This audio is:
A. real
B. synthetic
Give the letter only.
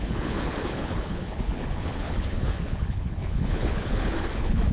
B